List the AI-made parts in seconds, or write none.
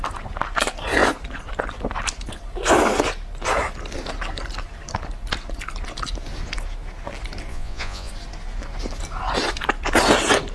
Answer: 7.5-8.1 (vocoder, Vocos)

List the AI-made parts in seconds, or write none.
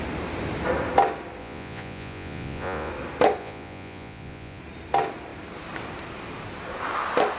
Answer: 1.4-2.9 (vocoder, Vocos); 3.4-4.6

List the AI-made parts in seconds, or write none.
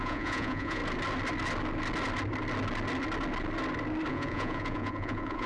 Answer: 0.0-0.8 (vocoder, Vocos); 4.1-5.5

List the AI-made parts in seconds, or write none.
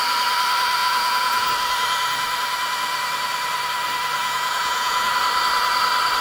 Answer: 0.8-1.5 (vocoder, Vocos); 4.2-5.1